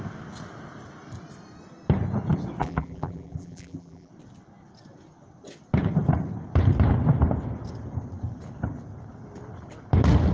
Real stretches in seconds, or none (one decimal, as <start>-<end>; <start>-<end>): 0.0-2.6; 4.1-10.3